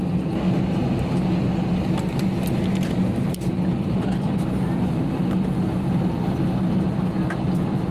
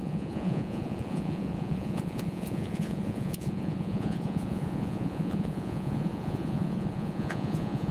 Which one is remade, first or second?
second